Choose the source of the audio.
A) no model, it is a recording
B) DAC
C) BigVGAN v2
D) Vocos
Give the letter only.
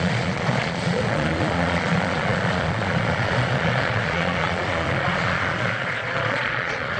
D